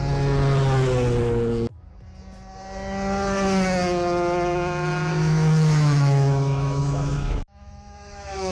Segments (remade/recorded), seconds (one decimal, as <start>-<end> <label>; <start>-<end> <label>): 0.0-5.1 recorded; 5.1-8.5 remade